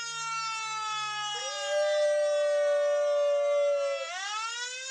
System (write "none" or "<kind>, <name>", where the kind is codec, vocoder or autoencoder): none